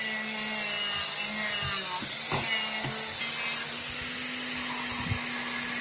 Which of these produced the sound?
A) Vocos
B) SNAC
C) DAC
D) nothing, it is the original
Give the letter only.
D